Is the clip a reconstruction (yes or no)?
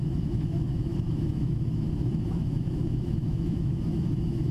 yes